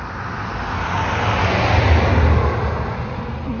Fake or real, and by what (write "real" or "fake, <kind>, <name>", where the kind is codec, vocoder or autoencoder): real